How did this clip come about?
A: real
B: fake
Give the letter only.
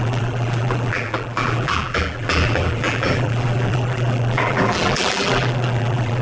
B